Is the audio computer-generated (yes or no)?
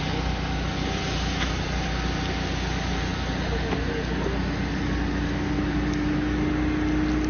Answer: no